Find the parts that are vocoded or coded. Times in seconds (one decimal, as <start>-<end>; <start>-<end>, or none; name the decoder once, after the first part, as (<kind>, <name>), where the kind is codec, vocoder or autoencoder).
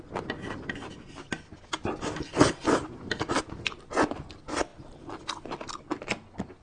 none